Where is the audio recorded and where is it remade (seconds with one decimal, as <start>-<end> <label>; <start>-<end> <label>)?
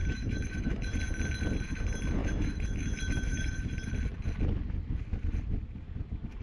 0.0-1.0 remade; 1.0-2.2 recorded; 2.2-3.9 remade; 3.9-6.4 recorded